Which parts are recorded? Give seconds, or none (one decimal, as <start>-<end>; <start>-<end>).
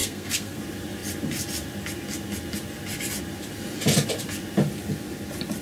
0.6-5.6